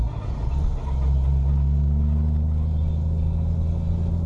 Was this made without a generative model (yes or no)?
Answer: yes